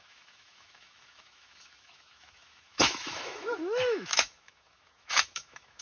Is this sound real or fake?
fake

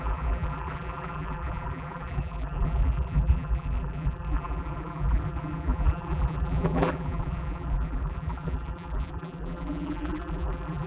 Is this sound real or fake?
fake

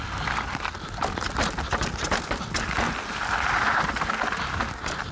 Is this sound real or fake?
real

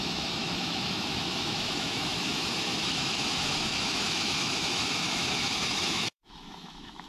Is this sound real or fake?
fake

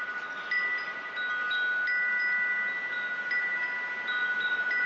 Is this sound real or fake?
real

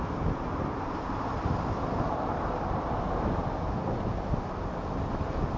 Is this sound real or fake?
real